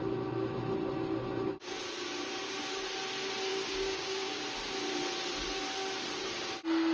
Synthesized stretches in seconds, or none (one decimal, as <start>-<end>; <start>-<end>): 3.5-4.4